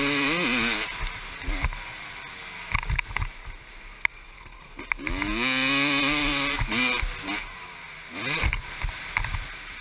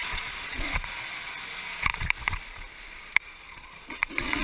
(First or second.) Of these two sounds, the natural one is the first